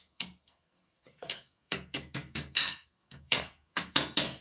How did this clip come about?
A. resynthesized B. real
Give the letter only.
A